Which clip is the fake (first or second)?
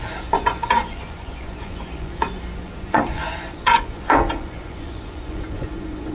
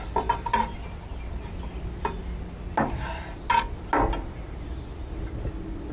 first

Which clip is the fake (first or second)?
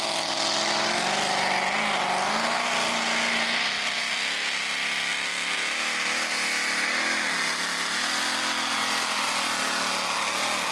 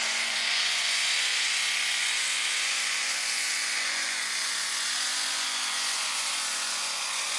second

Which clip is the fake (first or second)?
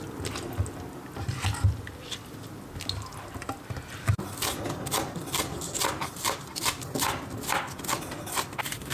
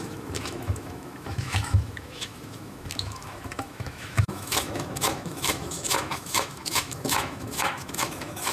second